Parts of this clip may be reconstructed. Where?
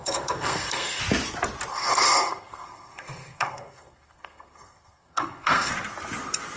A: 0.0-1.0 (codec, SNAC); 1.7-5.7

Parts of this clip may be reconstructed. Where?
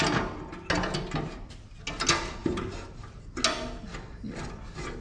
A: 2.4-3.2 (vocoder, BigVGAN v2)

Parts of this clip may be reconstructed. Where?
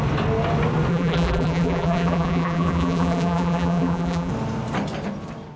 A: 0.9-4.3 (vocoder, BigVGAN v2)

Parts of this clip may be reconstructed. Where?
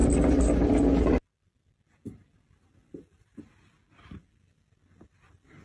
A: none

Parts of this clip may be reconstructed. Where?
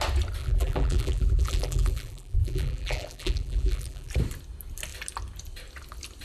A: 0.4-4.1 (vocoder, BigVGAN v2)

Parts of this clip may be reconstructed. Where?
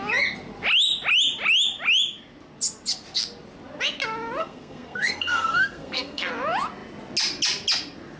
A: 4.4-6.3 (codec, SNAC)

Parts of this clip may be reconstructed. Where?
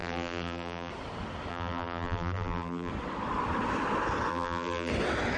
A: 0.0-0.9 (vocoder, BigVGAN v2); 1.5-2.9; 4.3-4.9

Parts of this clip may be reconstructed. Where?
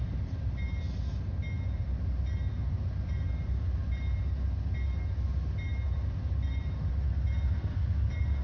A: none